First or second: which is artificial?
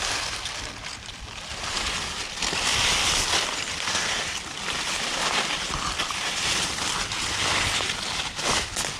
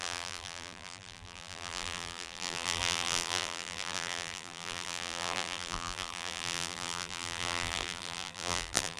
second